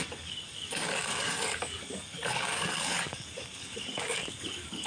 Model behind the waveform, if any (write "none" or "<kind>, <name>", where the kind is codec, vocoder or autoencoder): codec, DAC